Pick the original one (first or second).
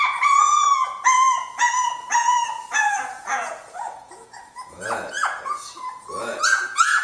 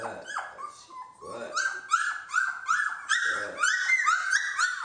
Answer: second